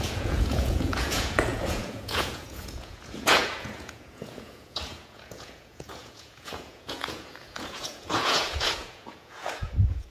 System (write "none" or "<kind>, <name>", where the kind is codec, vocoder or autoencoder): vocoder, Vocos